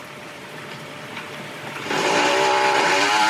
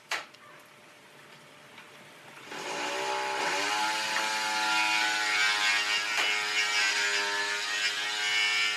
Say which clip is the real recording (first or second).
second